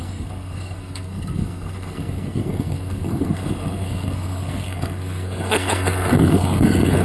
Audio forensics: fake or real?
fake